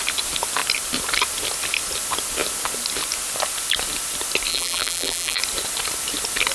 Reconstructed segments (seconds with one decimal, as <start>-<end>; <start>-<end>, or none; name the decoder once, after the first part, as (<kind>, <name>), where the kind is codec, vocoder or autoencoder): 4.5-5.4 (vocoder, BigVGAN v2)